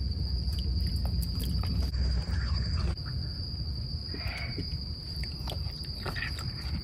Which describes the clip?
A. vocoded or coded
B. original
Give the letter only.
B